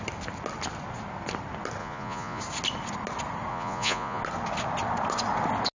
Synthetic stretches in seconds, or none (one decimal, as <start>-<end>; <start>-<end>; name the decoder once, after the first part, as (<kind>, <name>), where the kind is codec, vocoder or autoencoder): 1.8-2.4 (vocoder, Vocos); 3.5-4.2